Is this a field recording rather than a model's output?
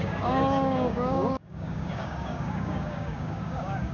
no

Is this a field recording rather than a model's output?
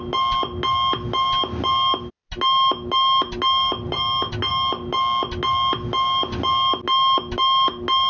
yes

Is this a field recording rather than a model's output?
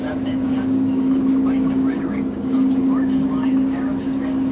no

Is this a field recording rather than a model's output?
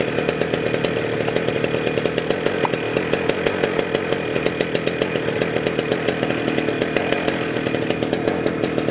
yes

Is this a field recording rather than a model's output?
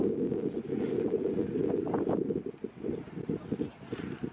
yes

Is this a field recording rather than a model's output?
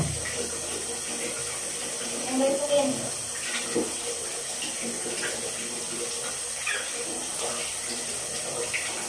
yes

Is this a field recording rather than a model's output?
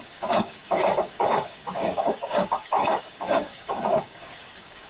no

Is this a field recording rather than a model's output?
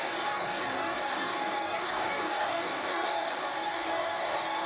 no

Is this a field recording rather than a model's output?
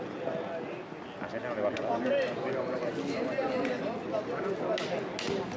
yes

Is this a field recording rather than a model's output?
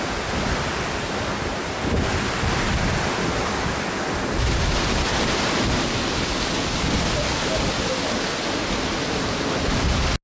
yes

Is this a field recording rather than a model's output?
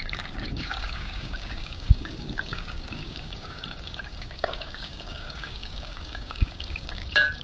no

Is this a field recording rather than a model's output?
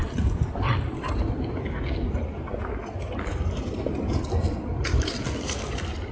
yes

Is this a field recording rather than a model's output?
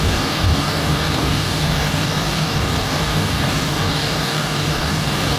no